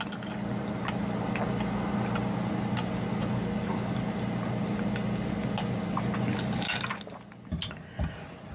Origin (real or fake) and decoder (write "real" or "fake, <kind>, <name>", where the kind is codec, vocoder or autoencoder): real